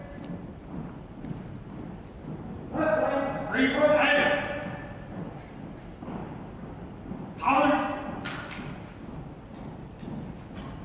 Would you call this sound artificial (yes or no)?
no